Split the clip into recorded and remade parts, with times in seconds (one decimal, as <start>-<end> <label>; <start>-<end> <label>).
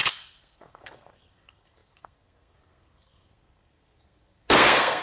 0.0-5.0 remade